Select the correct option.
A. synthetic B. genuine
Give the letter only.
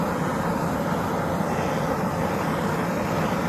B